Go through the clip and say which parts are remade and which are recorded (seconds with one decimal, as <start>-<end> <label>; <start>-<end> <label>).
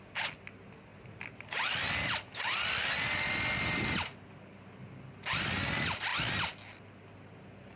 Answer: 0.0-7.8 recorded